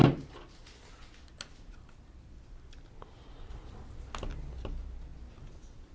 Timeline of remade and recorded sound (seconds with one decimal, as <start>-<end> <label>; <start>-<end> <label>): 0.0-5.9 recorded